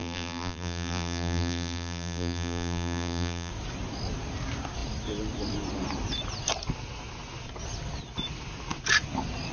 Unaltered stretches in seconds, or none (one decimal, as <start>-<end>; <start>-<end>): 3.5-9.5